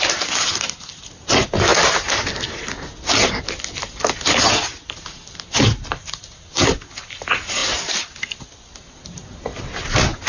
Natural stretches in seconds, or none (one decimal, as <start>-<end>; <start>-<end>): 0.0-10.3